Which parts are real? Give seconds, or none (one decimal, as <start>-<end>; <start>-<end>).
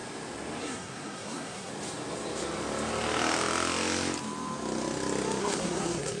0.0-0.6; 1.7-5.4